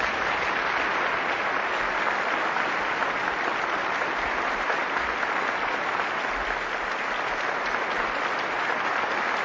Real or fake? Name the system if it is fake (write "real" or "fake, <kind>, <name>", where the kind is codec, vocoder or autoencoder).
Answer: real